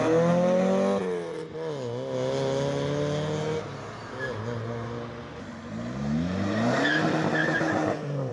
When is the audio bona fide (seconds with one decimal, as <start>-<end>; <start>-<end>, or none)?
0.0-7.4